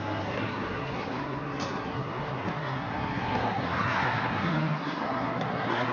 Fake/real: fake